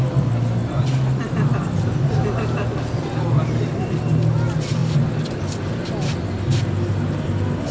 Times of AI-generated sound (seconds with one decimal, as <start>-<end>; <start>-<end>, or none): none